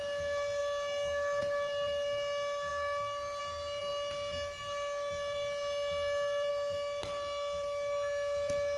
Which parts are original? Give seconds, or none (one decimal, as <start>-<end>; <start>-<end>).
0.0-8.8